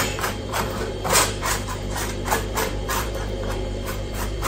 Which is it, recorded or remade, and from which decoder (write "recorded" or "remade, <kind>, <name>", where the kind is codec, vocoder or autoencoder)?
remade, vocoder, BigVGAN v2